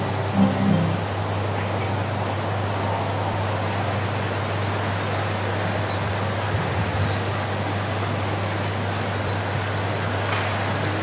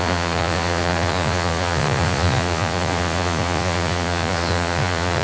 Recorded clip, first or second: first